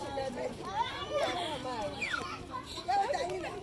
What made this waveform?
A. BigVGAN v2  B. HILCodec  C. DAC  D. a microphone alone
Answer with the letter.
A